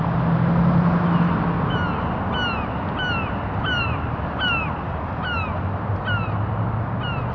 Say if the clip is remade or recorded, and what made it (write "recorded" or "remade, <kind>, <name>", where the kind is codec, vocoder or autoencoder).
recorded